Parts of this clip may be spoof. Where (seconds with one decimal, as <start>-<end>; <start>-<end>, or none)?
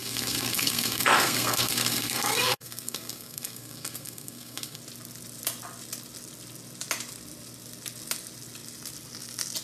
0.0-4.8